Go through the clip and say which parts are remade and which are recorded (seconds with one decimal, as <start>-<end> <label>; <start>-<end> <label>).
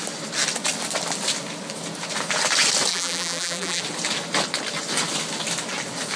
0.0-2.9 recorded; 2.9-3.8 remade; 3.8-6.2 recorded